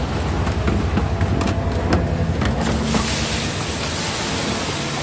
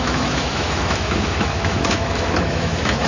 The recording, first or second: first